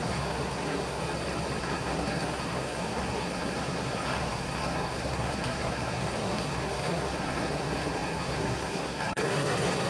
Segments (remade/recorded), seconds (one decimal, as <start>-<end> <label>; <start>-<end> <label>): 0.0-1.0 remade; 1.0-1.6 recorded; 1.6-9.9 remade